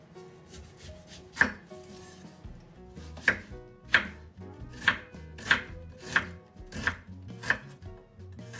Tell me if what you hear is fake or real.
real